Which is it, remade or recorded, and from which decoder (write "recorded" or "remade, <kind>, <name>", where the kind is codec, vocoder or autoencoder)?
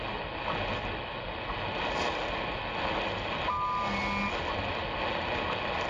recorded